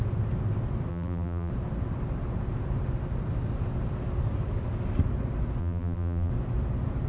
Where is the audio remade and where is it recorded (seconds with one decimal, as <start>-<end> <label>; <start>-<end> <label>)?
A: 0.0-0.9 recorded; 0.9-1.5 remade; 1.5-5.6 recorded; 5.6-6.3 remade; 6.3-7.1 recorded